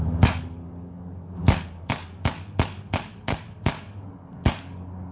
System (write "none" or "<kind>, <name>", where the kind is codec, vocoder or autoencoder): codec, DAC